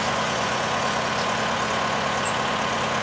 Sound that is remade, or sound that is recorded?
remade